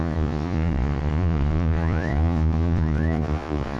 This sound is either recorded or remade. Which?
remade